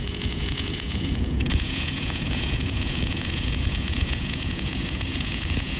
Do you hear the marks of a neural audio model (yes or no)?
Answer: yes